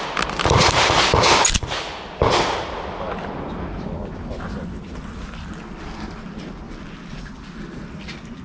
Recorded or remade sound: recorded